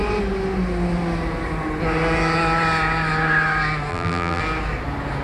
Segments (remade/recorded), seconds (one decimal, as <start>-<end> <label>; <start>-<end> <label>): 0.0-3.9 recorded; 3.9-4.4 remade; 4.4-5.2 recorded